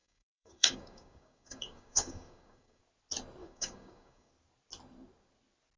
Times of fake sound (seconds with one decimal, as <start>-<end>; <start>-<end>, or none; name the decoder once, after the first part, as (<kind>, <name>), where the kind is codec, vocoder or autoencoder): 0.0-2.8 (codec, DAC); 3.4-4.3